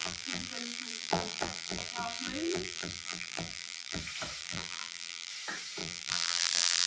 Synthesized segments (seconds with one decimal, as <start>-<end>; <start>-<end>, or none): 0.0-4.0; 4.4-5.3; 5.8-6.9